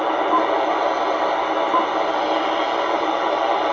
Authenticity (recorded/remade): recorded